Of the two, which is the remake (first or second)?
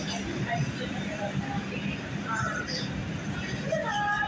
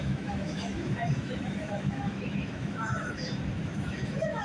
second